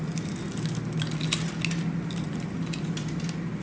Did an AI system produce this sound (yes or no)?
no